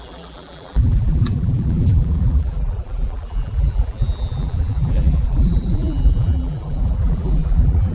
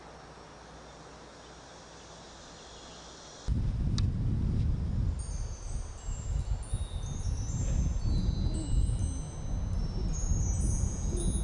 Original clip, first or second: second